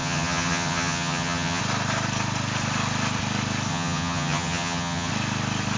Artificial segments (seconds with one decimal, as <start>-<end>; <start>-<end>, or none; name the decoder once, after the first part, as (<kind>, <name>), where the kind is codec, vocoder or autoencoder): 0.0-1.6 (vocoder, HiFi-GAN); 3.7-5.1